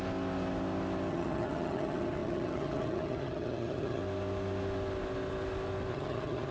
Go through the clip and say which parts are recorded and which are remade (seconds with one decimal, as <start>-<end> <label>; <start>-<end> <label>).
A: 0.0-1.1 recorded; 1.1-4.0 remade; 4.0-5.9 recorded; 5.9-6.5 remade